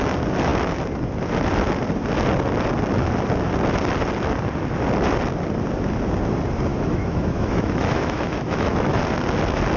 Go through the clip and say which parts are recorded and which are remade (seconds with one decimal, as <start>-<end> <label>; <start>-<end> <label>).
0.0-6.7 recorded; 6.7-9.0 remade; 9.0-9.8 recorded